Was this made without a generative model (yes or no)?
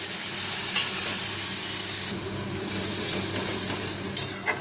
yes